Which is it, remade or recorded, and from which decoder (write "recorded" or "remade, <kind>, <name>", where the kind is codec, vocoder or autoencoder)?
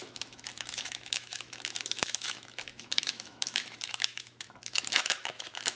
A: remade, autoencoder, DAC-VAE